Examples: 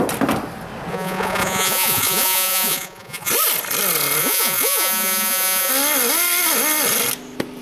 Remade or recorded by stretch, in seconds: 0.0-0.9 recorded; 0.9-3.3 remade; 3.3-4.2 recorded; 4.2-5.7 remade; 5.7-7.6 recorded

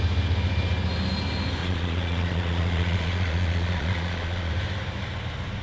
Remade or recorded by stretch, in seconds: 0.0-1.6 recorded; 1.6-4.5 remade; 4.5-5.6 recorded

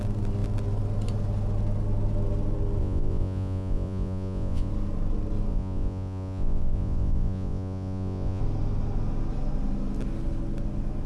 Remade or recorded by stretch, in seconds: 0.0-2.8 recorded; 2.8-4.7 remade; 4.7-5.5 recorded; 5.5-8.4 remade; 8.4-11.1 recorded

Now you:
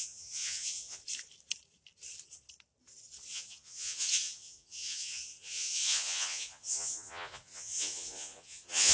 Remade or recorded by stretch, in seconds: 0.0-1.0 remade; 1.0-3.3 recorded; 3.3-8.9 remade

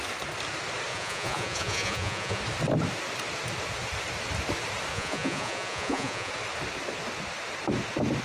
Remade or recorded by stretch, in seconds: 0.0-0.9 recorded; 0.9-2.4 remade; 2.4-4.9 recorded; 4.9-6.3 remade; 6.3-8.2 recorded